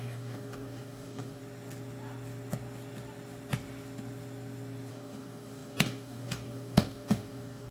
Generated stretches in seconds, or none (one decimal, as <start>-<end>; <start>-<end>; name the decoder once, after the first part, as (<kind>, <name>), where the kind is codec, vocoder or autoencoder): 0.0-1.4 (codec, DAC); 4.9-7.7